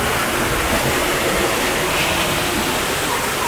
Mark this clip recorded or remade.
recorded